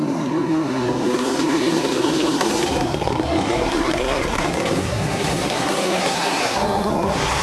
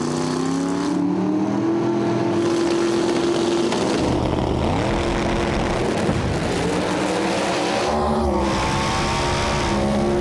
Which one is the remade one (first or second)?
first